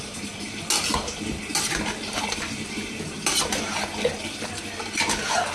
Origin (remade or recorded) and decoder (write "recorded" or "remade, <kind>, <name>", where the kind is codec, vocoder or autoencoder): recorded